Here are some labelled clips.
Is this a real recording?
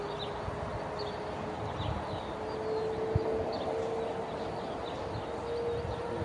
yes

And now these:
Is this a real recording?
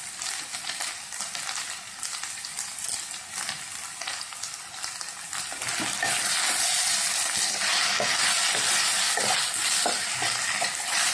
yes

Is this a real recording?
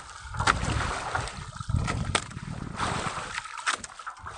yes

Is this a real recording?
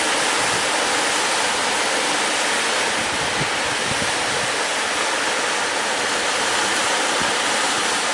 yes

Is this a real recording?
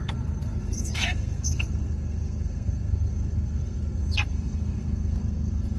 no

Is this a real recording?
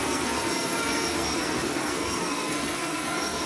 no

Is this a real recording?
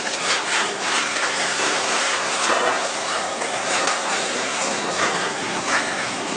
no